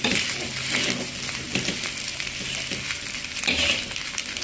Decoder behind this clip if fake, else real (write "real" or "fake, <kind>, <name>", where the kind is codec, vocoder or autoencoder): real